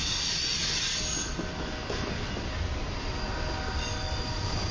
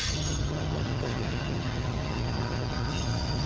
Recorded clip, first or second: first